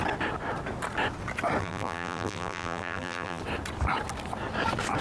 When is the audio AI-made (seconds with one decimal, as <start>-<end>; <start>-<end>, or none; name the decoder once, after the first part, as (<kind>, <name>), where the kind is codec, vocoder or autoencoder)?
1.6-3.4 (vocoder, BigVGAN v2)